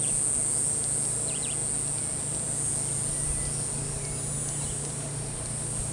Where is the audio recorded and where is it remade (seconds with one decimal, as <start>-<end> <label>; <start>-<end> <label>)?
0.0-5.9 recorded